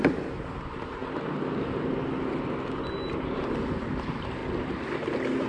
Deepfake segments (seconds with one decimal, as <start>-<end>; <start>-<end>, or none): none